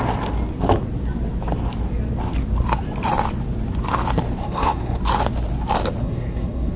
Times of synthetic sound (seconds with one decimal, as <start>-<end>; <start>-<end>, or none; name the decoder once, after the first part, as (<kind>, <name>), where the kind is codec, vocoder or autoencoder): 4.4-5.0 (codec, SNAC); 6.0-6.8